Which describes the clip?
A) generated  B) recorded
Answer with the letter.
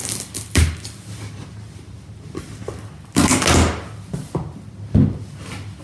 B